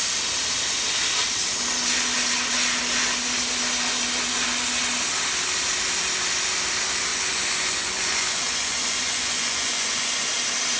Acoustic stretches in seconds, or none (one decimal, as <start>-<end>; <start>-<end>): 0.0-7.1; 10.3-10.8